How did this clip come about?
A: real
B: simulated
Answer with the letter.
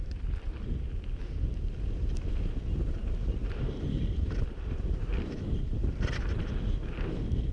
A